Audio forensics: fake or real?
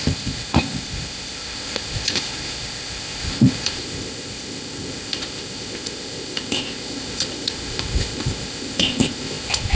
fake